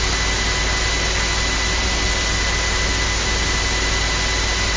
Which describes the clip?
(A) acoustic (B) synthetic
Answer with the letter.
A